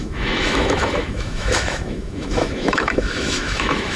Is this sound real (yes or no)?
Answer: no